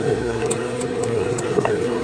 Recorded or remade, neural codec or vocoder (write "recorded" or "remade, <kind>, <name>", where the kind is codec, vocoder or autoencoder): remade, codec, SNAC